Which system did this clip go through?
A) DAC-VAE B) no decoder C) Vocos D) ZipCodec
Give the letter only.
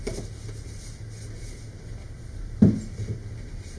B